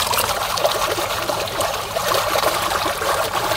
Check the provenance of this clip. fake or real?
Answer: fake